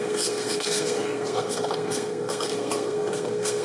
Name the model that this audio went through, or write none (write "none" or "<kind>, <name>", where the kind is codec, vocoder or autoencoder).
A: codec, SNAC